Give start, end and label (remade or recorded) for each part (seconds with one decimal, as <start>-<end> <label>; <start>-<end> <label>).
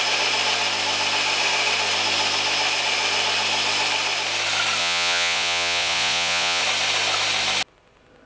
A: 0.0-4.8 recorded; 4.8-6.6 remade; 6.6-8.3 recorded